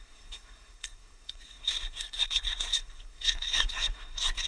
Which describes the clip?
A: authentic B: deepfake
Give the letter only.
B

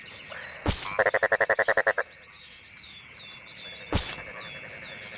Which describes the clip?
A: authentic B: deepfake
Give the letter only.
A